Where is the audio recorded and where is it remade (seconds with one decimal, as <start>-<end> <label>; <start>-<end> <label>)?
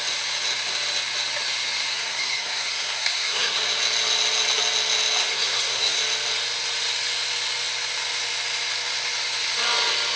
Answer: 0.0-1.9 recorded; 1.9-3.6 remade; 3.6-5.2 recorded; 5.2-6.0 remade; 6.0-10.2 recorded